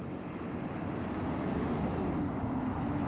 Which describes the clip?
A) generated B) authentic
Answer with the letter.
B